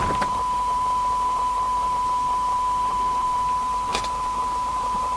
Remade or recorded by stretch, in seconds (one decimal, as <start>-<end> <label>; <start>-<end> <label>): 0.0-5.2 remade